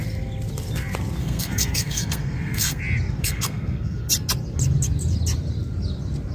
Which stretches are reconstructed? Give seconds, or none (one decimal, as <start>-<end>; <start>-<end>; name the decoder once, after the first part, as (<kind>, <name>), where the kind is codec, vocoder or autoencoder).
1.2-2.8 (codec, SNAC); 3.2-4.1